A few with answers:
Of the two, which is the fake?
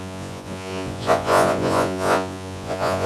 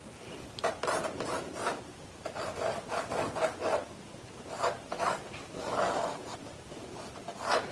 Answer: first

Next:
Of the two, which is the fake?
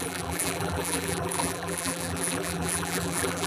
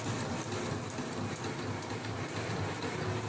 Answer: first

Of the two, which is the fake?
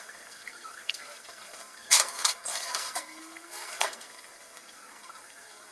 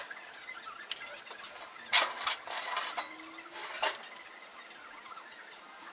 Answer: first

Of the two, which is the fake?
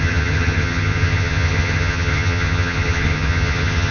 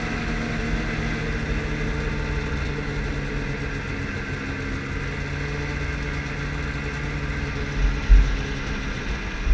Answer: first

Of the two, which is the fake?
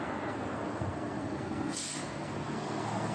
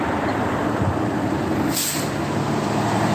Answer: first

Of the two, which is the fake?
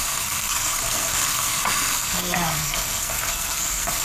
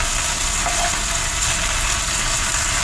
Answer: first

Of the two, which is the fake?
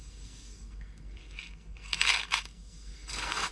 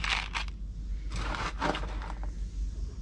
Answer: first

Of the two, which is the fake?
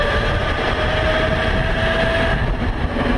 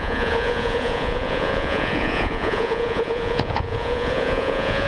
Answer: second